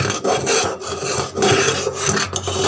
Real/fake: real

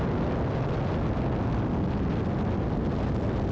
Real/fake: real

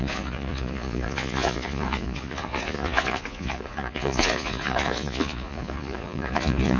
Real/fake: fake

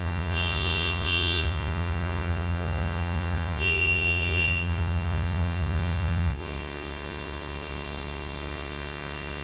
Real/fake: fake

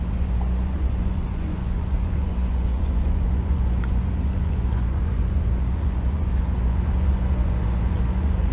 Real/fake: fake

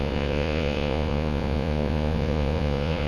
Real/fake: fake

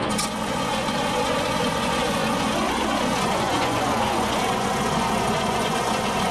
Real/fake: fake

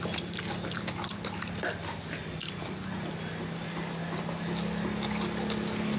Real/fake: real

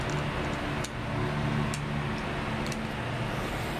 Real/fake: real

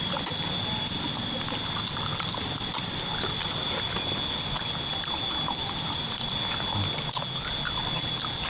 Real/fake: real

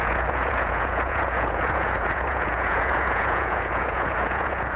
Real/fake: fake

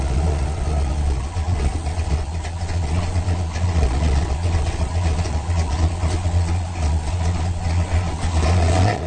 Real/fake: fake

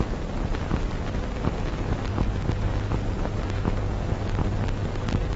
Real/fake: real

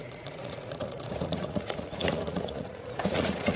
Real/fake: fake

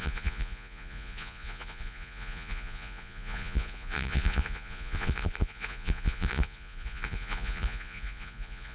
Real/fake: fake